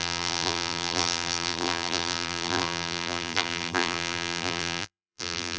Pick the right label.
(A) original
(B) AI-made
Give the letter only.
B